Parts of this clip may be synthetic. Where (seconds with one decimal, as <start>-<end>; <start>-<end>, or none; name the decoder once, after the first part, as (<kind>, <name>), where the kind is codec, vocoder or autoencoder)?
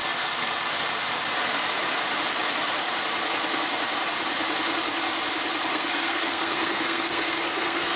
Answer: 5.7-8.0 (codec, SNAC)